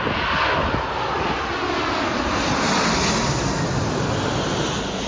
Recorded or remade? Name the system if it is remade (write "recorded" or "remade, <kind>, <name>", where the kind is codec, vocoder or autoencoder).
recorded